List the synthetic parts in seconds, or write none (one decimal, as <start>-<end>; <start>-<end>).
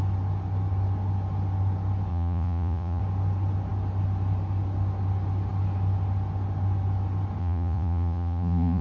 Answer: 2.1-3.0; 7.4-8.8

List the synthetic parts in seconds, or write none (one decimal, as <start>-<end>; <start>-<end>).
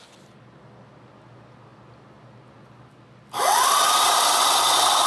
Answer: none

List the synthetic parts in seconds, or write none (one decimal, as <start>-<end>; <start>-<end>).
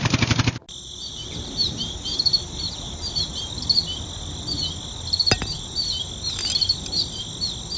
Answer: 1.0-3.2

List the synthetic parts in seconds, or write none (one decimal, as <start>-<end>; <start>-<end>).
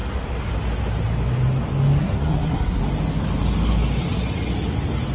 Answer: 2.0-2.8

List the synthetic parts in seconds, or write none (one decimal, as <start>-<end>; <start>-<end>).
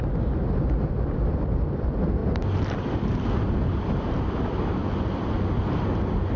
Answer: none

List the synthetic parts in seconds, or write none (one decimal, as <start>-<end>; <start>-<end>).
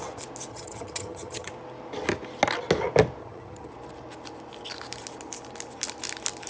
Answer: 0.5-1.5; 3.2-3.7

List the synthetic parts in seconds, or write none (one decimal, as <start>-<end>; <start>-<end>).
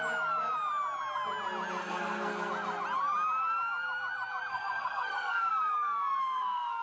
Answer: 1.8-2.5; 4.5-5.5; 6.2-6.8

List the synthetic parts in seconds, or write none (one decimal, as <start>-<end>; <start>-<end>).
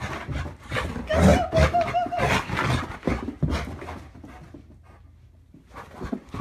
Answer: none